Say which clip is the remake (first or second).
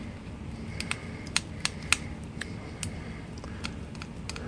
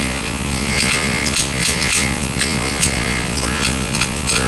second